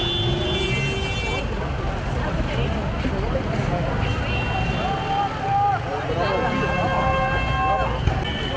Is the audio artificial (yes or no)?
no